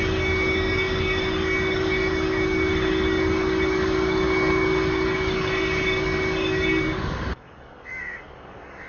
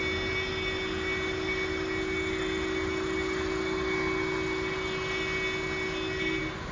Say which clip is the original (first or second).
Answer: second